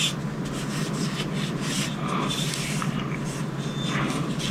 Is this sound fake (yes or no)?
no